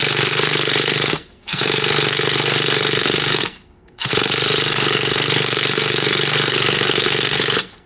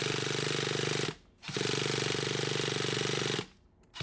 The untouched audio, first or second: second